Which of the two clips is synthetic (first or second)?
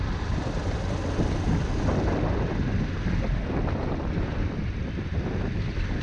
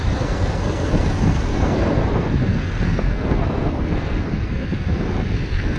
second